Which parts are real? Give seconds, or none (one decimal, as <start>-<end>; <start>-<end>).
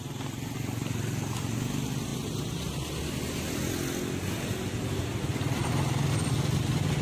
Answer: 0.0-7.0